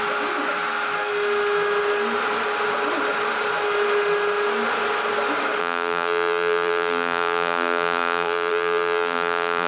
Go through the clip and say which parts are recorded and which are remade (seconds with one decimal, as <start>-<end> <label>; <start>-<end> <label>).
0.0-5.6 recorded; 5.6-9.7 remade